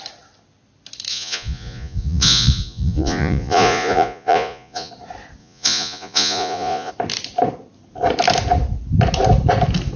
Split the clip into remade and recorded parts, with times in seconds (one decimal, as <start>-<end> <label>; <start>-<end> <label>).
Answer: 0.0-1.1 recorded; 1.1-4.9 remade; 4.9-5.4 recorded; 5.4-6.9 remade; 6.9-10.0 recorded